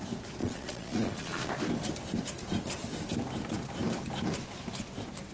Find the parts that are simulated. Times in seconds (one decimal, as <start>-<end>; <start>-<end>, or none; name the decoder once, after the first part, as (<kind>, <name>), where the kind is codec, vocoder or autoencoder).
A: 0.4-1.5 (vocoder, Vocos)